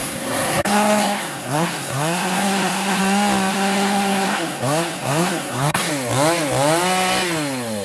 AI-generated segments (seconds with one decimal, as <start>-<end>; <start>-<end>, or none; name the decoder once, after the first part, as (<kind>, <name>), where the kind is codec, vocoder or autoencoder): 0.0-3.0 (codec, SNAC); 3.5-5.9